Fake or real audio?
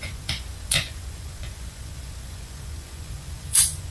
fake